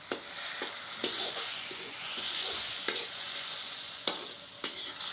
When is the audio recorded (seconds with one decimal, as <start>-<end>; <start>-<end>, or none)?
0.0-1.0; 4.1-5.1